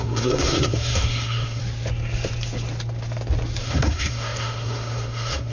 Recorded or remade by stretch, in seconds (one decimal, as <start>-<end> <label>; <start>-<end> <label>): 0.0-1.6 remade; 1.6-3.6 recorded; 3.6-5.5 remade